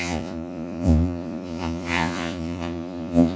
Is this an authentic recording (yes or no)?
no